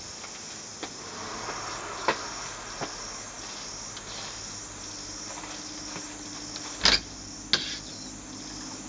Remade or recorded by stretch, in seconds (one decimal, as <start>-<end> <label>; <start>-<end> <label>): 0.0-8.9 recorded